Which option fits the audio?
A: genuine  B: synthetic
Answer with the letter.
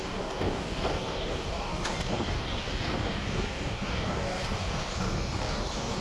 B